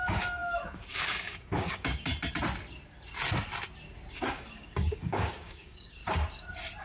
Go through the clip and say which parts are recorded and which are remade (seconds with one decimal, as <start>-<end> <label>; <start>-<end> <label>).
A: 0.0-2.1 remade; 2.1-4.1 recorded; 4.1-6.0 remade; 6.0-6.8 recorded